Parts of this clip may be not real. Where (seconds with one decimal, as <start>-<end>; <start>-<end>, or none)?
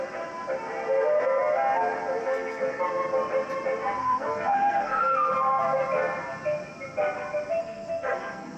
2.2-2.8; 4.0-5.3; 7.6-8.6